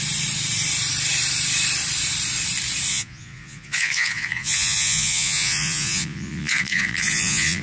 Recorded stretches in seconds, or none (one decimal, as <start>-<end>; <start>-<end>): 0.0-2.9